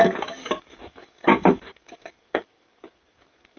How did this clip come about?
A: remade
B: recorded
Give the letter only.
A